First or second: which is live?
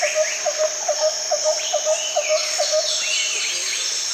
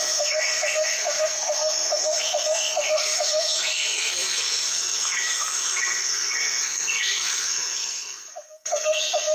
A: first